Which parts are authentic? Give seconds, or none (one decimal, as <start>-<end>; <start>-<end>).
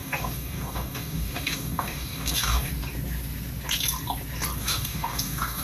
2.7-4.6